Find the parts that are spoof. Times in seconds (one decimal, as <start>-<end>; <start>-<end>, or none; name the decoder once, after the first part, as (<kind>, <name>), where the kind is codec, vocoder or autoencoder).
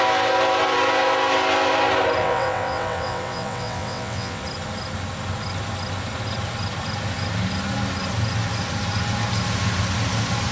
2.2-4.4 (vocoder, WaveNeXt)